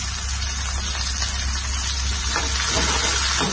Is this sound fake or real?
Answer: real